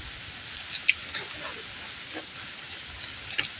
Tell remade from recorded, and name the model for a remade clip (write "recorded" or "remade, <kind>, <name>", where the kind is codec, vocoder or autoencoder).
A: recorded